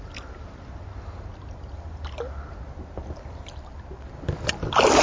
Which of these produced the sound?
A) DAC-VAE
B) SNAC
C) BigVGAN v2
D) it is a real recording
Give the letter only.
D